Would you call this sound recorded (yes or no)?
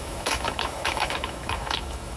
no